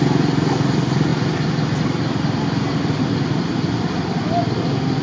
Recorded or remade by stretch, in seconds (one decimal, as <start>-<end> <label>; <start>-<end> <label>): 0.0-5.0 recorded